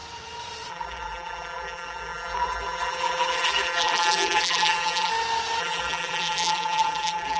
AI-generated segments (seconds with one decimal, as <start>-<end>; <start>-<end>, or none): 0.7-5.1; 5.6-7.4